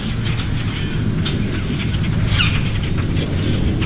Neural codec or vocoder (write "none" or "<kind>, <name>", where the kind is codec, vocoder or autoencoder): none